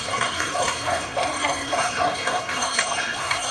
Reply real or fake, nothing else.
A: fake